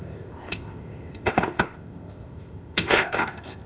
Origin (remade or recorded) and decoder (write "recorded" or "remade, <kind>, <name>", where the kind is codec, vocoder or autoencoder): remade, codec, ZipCodec